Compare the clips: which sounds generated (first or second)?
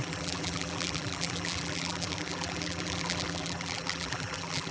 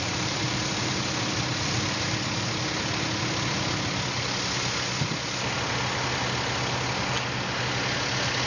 first